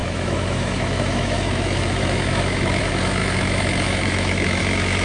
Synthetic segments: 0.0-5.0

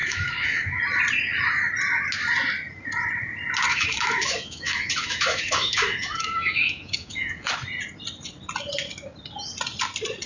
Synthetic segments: 0.0-0.8; 3.7-7.5

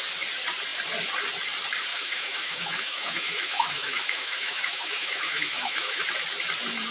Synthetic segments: 1.9-6.0

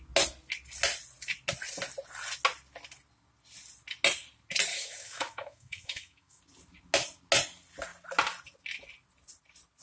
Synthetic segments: 4.7-6.4